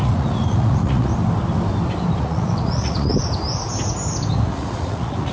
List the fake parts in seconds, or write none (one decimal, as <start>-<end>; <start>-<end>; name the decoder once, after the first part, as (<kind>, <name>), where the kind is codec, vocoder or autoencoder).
0.0-1.1 (vocoder, Vocos); 2.2-3.1; 4.3-5.3